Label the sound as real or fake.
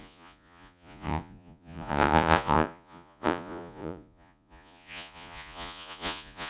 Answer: fake